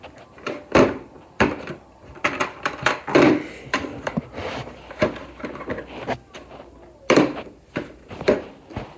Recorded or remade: recorded